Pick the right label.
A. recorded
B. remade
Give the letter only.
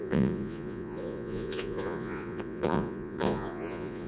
B